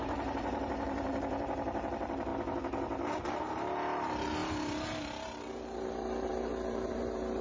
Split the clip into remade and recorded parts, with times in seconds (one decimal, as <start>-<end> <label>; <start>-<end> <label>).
0.0-2.3 remade; 2.3-3.2 recorded; 3.2-4.4 remade; 4.4-5.0 recorded; 5.0-7.4 remade